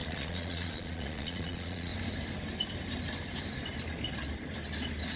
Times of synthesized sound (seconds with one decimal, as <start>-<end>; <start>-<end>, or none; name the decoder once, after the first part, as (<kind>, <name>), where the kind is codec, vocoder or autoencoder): 0.0-1.9 (vocoder, Vocos)